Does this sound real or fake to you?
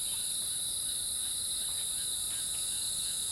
real